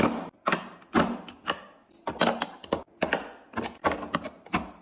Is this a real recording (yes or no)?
yes